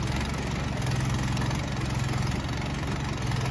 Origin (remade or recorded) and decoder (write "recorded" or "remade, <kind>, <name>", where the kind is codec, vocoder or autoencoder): recorded